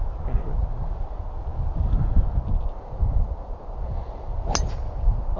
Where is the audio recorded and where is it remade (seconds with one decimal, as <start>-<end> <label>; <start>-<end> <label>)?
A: 0.0-5.4 recorded